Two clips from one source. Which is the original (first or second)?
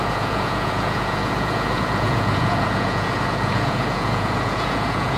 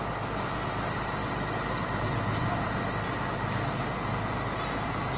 second